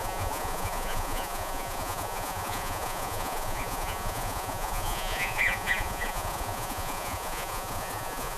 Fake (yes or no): yes